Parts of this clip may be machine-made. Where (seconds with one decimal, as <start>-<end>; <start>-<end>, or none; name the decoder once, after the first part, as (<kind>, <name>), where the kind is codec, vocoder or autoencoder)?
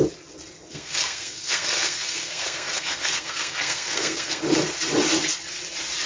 0.7-4.4 (codec, SNAC)